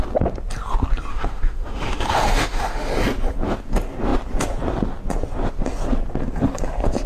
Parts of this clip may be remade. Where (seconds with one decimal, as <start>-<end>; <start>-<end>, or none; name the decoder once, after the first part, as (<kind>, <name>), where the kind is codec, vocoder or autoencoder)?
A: 1.1-2.9 (autoencoder, DAC-VAE)